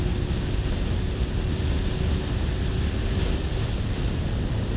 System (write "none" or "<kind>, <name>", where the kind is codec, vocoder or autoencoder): none